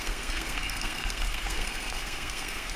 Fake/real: fake